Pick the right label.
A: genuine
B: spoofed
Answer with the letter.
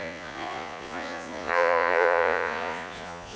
B